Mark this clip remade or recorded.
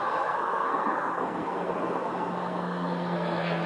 remade